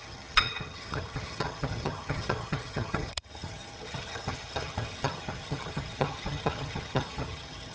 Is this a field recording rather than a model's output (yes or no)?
no